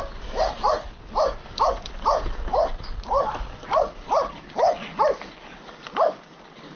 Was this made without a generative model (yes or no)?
yes